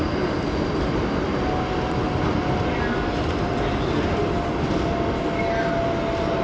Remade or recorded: recorded